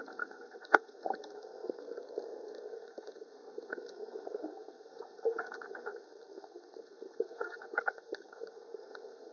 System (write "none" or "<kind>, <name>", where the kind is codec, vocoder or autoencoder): codec, SNAC